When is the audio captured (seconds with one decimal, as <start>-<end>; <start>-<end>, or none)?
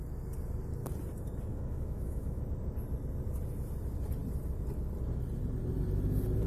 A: 0.0-1.5; 2.4-6.5